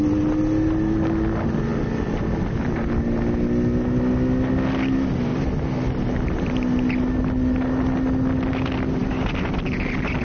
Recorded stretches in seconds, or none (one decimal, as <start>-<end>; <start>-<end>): 0.0-10.2